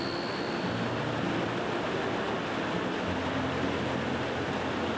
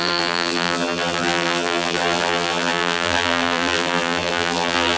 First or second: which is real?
first